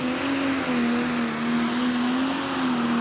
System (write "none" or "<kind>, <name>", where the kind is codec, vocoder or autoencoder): none